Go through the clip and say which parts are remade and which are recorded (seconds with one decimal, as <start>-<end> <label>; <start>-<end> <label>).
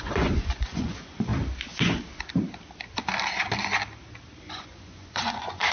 0.0-1.3 remade; 1.3-4.4 recorded; 4.4-5.7 remade